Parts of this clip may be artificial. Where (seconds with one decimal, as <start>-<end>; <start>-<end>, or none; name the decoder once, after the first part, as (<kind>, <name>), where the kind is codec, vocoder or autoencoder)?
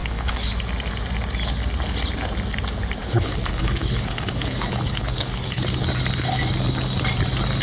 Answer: 0.0-0.5 (codec, HILCodec); 3.0-5.7